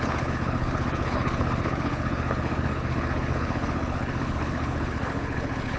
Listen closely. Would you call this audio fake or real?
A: fake